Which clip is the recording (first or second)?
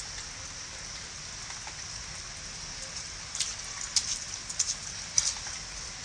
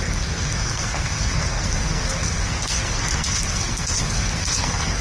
first